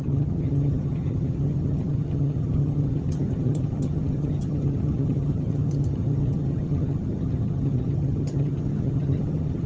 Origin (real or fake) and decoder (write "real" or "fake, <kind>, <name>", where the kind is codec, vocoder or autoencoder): fake, vocoder, HiFi-GAN